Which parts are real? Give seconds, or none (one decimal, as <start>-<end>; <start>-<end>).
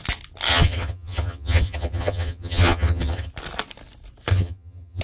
0.0-0.5; 3.3-4.3